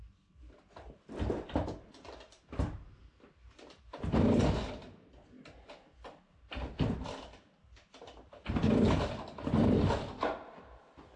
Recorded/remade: recorded